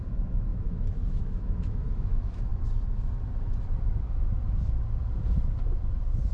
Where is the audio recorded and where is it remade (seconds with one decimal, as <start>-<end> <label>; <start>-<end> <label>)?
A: 0.0-2.5 remade; 2.5-6.3 recorded